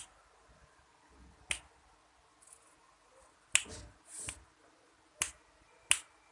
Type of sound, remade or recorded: recorded